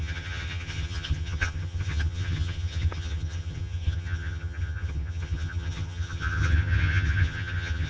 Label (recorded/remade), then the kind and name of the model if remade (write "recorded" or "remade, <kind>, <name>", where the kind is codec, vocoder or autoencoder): remade, vocoder, HiFi-GAN